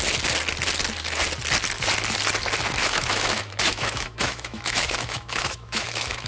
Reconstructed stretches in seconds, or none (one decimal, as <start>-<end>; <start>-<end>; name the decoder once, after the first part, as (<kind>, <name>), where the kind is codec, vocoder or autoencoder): 2.8-6.3 (autoencoder, DAC-VAE)